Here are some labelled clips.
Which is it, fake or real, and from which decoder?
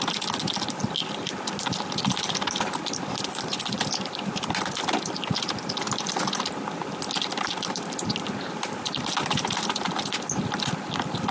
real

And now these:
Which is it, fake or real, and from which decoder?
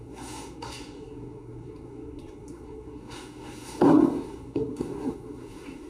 fake, codec, SNAC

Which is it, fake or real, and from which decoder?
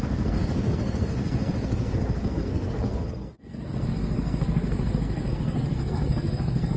fake, codec, SNAC